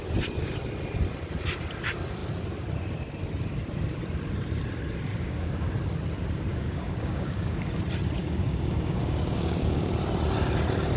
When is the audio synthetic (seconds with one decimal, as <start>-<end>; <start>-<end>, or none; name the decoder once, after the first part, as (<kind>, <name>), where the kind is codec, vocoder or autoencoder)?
5.1-5.7 (codec, DAC); 6.5-7.7; 8.2-9.9